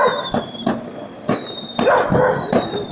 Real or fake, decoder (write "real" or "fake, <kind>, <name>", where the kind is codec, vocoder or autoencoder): real